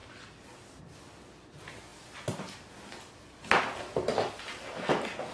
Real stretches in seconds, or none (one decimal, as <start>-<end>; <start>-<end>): 0.0-1.9; 3.0-5.3